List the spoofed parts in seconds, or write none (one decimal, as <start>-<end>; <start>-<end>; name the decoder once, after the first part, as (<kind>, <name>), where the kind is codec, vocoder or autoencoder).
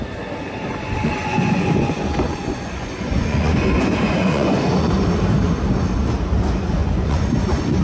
0.7-4.9 (vocoder, Vocos); 6.8-7.8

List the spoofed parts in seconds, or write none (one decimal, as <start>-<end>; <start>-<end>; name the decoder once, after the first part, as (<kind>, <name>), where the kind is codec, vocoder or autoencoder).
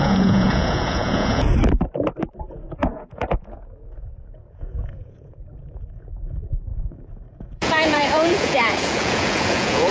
0.0-1.5 (vocoder, Vocos); 2.5-9.9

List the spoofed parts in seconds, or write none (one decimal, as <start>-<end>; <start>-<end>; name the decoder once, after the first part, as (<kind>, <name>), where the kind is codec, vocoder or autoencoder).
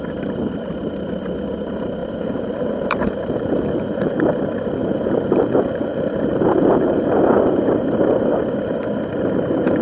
2.0-4.1 (vocoder, BigVGAN v2); 4.8-7.2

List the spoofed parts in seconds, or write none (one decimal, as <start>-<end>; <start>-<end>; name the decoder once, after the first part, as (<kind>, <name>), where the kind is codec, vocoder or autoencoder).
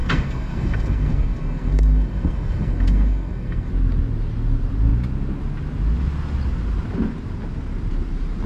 0.0-3.7 (codec, SNAC)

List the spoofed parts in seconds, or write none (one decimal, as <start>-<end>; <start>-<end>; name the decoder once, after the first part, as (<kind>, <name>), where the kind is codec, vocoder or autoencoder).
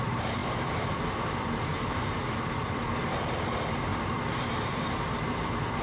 0.0-5.8 (vocoder, BigVGAN v2)